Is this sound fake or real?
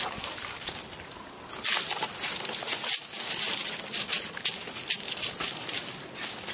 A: real